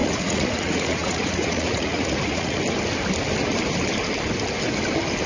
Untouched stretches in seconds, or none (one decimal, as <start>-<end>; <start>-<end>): 2.6-5.3